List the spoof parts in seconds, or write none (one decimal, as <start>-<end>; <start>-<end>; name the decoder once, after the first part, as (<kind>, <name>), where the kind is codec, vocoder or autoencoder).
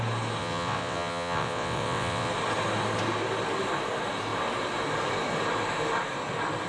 0.4-2.3 (vocoder, WaveNeXt)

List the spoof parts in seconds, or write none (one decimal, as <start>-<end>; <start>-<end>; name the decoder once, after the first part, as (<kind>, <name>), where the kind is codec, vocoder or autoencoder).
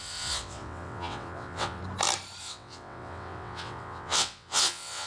0.0-1.8 (vocoder, WaveNeXt); 2.4-5.1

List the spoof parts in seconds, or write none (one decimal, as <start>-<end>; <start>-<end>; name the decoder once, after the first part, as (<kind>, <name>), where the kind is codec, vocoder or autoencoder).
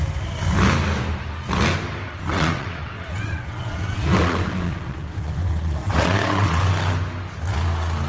2.3-6.6 (vocoder, WaveNeXt)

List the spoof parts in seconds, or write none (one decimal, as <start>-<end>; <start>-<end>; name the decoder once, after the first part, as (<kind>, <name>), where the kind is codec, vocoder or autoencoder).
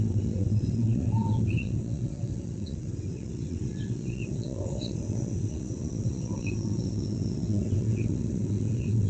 0.0-9.1 (vocoder, WaveNeXt)